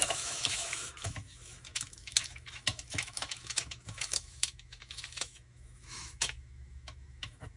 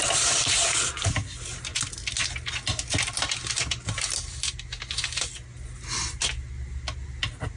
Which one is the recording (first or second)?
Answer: second